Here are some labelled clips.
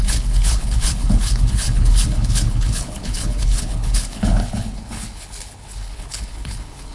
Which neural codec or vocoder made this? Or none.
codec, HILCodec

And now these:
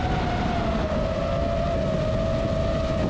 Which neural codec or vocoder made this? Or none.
none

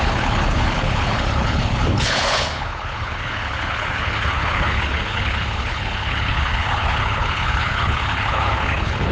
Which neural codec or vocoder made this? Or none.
codec, HILCodec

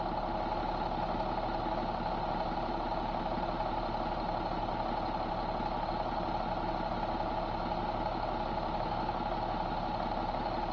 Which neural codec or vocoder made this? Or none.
none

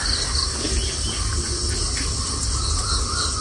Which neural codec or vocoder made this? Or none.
none